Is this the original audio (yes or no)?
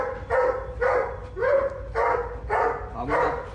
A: yes